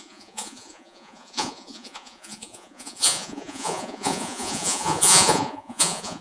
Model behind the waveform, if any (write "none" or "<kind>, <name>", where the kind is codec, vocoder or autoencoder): vocoder, Vocos